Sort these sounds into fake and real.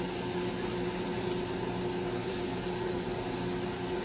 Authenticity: real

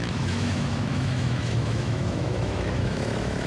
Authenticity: fake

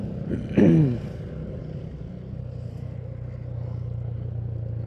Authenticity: real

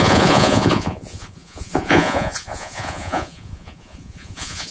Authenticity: fake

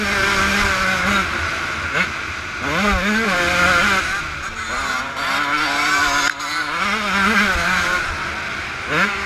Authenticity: real